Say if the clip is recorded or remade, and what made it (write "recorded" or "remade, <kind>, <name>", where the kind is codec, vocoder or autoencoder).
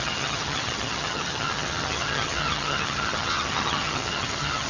remade, vocoder, HiFi-GAN